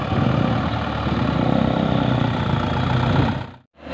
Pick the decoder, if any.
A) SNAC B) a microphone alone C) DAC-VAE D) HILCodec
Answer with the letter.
B